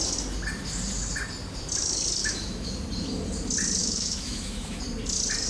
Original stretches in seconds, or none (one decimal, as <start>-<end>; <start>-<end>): 0.0-2.2; 2.7-3.8; 4.8-5.5